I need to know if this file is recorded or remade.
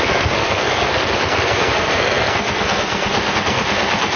remade